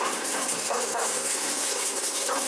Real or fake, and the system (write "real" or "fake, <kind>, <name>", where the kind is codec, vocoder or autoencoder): fake, codec, SNAC